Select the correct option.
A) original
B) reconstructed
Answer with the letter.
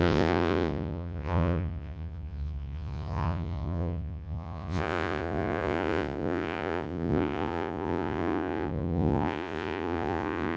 B